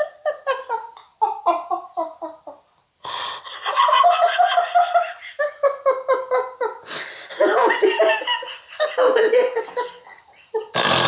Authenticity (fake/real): real